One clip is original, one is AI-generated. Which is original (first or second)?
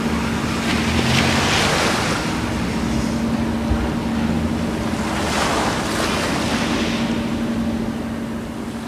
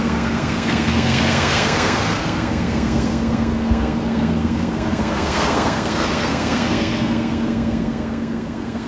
first